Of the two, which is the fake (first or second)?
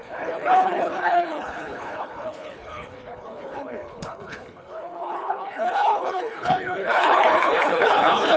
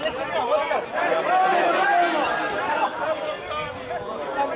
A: first